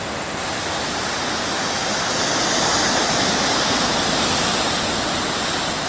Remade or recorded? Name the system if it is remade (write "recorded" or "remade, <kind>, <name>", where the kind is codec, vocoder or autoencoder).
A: recorded